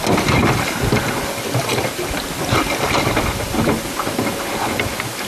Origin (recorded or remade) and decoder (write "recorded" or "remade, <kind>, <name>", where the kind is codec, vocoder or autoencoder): recorded